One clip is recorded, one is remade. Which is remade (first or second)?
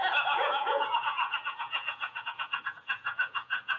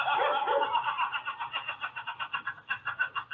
first